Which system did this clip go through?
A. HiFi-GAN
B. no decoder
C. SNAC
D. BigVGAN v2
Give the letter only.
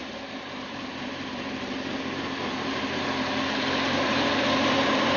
D